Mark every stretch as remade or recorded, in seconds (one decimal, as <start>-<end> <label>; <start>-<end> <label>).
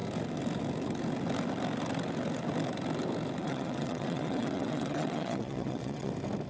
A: 0.0-3.4 recorded; 3.4-6.1 remade; 6.1-6.5 recorded